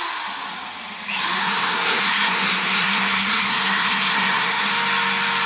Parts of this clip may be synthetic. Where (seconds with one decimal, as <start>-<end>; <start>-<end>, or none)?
1.4-4.7